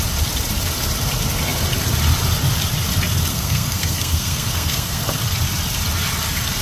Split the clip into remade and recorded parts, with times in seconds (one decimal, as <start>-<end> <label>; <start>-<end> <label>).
0.0-3.3 recorded; 3.3-5.0 remade; 5.0-6.6 recorded